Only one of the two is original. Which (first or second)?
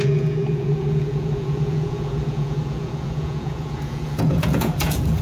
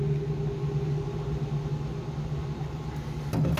second